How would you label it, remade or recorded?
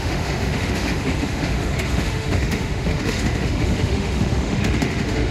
remade